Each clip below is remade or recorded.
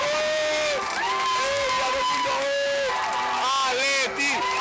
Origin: recorded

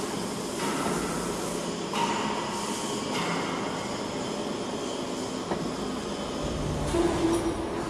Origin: recorded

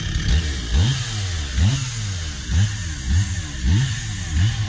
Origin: recorded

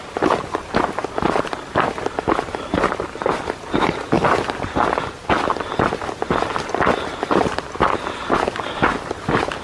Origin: recorded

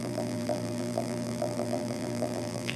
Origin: remade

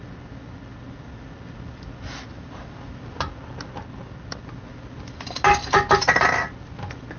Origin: recorded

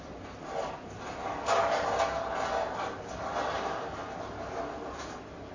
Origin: recorded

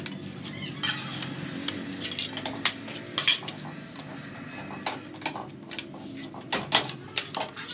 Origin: recorded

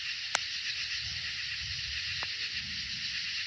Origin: recorded